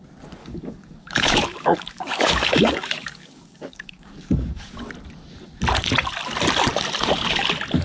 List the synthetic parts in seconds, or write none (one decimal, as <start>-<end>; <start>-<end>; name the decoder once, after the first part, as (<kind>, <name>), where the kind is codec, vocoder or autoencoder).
0.4-4.8 (codec, DAC)